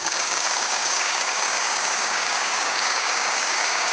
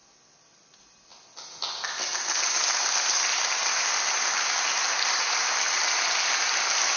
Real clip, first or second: second